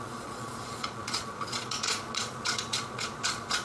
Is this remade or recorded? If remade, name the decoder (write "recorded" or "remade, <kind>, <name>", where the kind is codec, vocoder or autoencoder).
remade, vocoder, Vocos